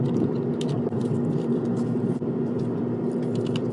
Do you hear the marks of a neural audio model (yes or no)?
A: yes